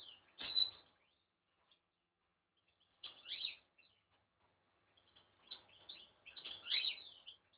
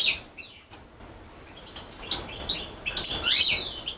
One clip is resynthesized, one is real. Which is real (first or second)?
second